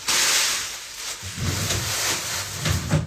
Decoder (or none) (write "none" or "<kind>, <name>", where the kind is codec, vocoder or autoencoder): none